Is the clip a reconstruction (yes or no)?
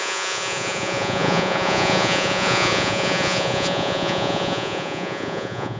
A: yes